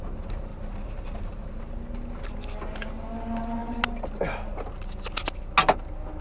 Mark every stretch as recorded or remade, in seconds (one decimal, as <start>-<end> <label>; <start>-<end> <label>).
0.0-0.5 recorded; 0.5-1.6 remade; 1.6-6.2 recorded